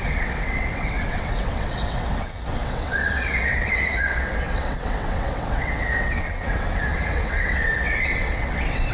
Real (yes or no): no